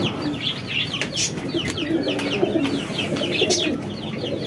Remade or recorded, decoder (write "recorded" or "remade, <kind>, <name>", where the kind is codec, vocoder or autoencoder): recorded